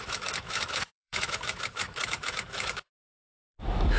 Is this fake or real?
fake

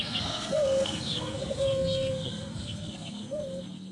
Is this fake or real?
fake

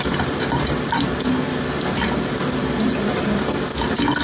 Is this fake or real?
real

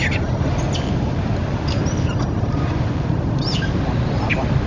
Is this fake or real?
real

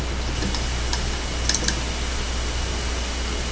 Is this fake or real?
real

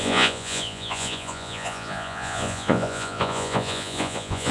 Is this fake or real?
fake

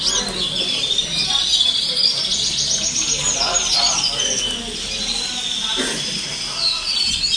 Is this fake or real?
real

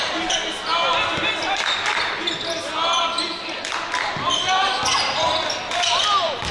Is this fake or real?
real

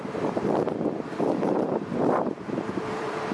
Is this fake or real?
fake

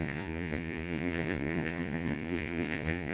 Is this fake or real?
fake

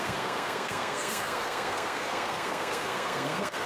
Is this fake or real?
fake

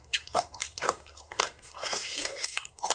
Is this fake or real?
fake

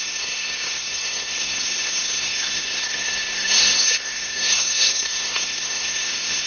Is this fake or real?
fake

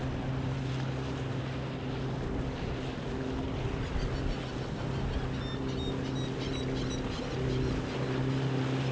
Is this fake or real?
real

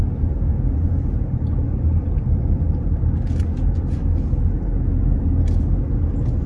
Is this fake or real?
real